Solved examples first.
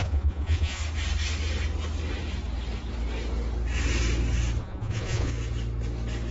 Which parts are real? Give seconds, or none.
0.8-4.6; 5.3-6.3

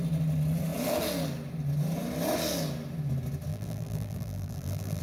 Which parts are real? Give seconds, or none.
0.0-3.5

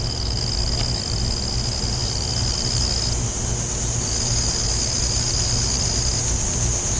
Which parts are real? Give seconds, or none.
0.0-7.0

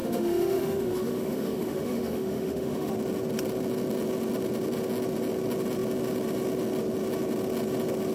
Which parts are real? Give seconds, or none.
2.9-8.1

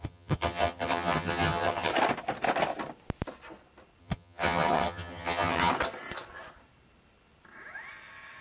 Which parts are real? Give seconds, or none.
1.9-4.0; 5.7-8.4

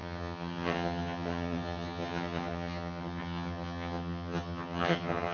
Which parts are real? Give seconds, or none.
none